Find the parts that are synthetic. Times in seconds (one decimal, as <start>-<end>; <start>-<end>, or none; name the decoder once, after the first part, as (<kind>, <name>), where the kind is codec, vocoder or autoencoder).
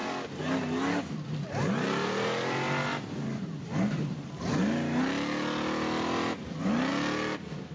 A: none